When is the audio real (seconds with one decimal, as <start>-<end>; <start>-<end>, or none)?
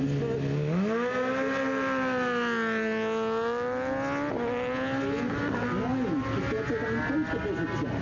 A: 0.0-8.0